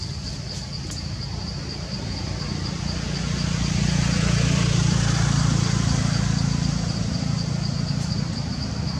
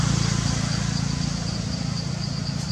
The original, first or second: second